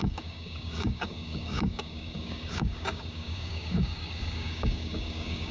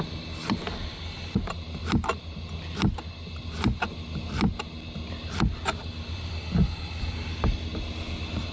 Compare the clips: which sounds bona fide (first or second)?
second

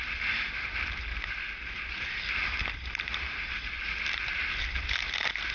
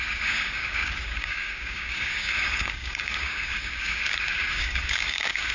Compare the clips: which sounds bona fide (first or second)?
first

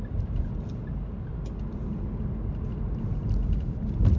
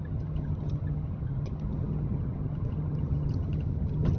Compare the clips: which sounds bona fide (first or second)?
first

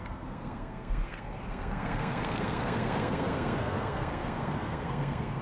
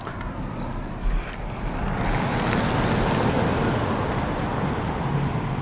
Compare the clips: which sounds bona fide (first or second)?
second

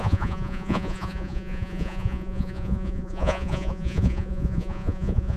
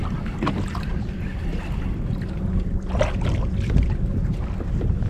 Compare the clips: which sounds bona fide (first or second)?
second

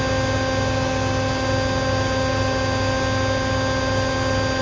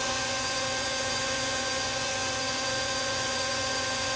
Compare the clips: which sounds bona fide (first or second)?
first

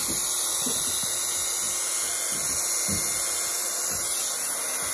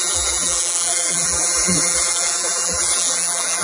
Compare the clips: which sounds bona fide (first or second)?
first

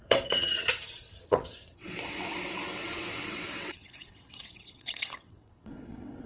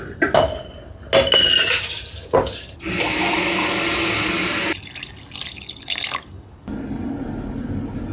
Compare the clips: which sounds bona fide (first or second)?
second